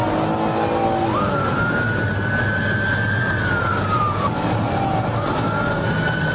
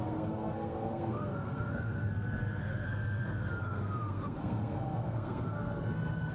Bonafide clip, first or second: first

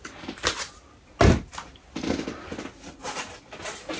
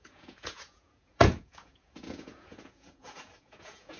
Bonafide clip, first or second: first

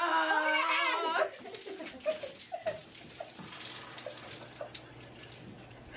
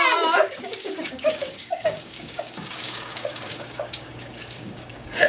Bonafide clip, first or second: first